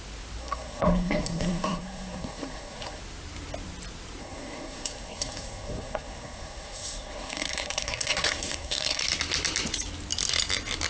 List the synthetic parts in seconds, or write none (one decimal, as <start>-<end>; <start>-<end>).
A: 0.4-3.0; 4.2-9.0